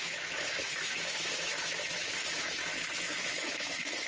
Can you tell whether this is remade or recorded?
remade